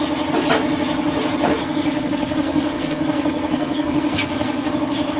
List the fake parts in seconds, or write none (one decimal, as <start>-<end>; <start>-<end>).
1.6-4.7

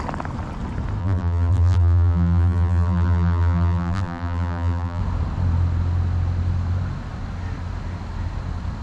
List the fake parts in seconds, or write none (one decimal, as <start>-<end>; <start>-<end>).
1.0-5.0

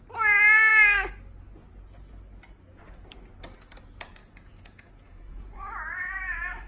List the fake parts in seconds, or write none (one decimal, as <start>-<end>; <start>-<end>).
4.2-6.7

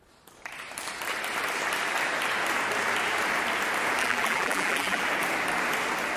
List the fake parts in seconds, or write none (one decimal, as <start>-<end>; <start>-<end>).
4.0-5.0

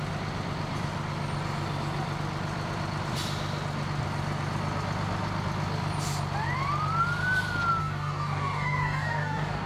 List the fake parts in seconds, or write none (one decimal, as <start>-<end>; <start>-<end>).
7.8-9.7

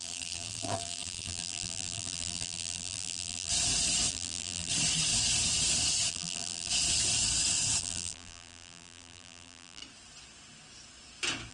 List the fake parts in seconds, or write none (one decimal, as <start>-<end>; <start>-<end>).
0.0-3.5; 4.1-4.7; 6.1-6.7; 7.8-9.8